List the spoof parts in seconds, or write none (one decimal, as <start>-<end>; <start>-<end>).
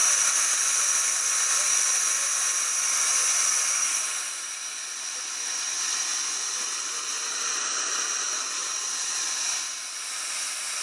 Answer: none